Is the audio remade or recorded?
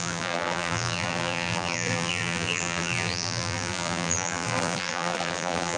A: remade